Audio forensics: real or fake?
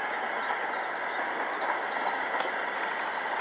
real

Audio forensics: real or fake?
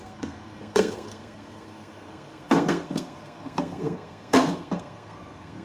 fake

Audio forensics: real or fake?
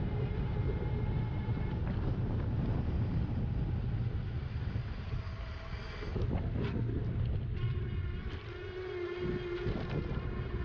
real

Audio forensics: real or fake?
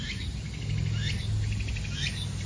real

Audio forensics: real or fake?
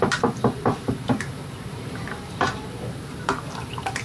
fake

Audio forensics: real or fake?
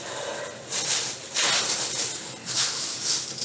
real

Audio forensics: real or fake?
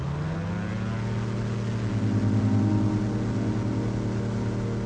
real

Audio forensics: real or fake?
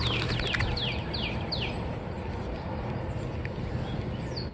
real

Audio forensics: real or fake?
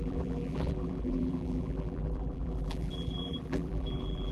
fake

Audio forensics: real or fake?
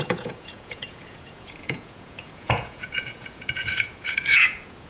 fake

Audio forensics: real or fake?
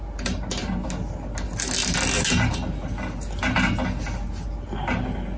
real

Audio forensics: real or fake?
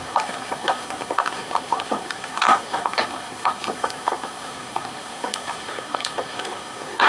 fake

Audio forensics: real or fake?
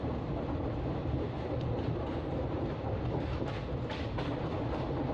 real